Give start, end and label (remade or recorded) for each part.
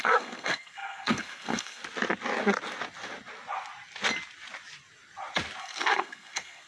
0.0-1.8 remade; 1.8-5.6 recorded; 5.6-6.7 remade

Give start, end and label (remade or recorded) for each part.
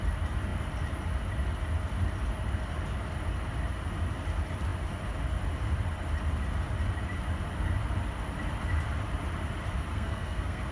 0.0-9.9 recorded; 9.9-10.7 remade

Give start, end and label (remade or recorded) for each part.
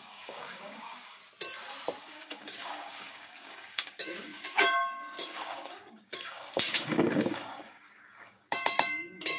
0.0-1.2 remade; 1.2-2.0 recorded; 2.0-9.4 remade